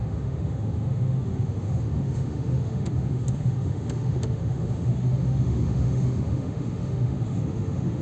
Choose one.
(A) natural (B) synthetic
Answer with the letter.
B